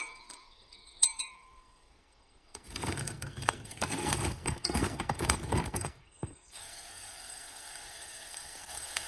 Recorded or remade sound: remade